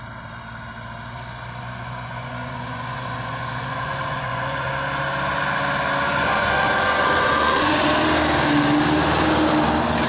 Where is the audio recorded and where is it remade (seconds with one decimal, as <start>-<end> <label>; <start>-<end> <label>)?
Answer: 0.0-1.6 recorded; 1.6-4.7 remade; 4.7-6.1 recorded; 6.1-7.9 remade; 7.9-10.1 recorded